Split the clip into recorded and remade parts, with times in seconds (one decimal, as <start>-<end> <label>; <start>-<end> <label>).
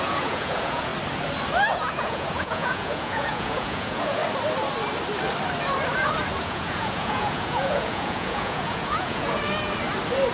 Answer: 0.0-0.9 remade; 0.9-1.7 recorded; 1.7-4.2 remade; 4.2-6.4 recorded; 6.4-9.4 remade; 9.4-10.3 recorded